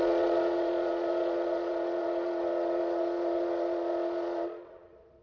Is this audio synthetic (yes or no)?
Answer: yes